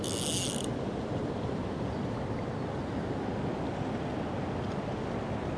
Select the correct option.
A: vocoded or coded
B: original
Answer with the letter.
B